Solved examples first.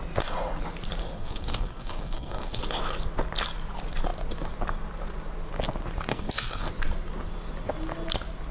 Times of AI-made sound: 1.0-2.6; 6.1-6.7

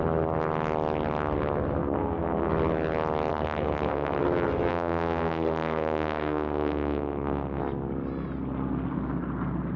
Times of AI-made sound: 1.8-2.5; 3.3-4.2; 4.7-7.6